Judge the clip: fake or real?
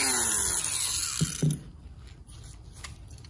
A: real